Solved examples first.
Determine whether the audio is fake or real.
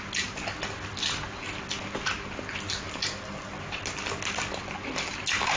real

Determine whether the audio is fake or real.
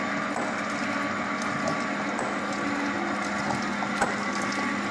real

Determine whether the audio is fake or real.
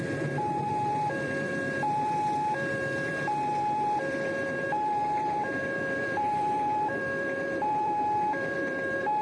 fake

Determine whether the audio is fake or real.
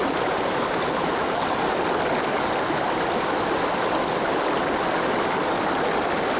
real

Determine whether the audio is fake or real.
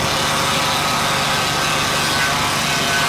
real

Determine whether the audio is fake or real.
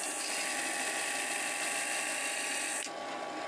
real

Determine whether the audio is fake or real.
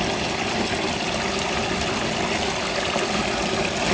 real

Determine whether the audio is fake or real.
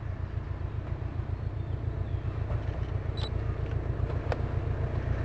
real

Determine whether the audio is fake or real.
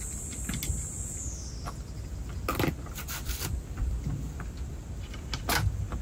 real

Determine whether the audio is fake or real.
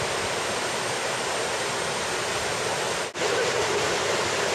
real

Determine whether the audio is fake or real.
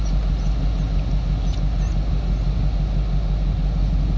real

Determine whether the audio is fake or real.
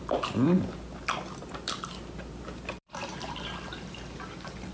fake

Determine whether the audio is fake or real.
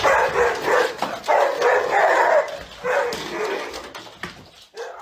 real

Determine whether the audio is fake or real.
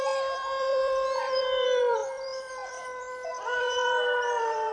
fake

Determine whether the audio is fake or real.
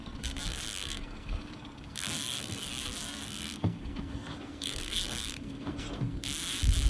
fake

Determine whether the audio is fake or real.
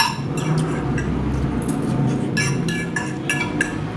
real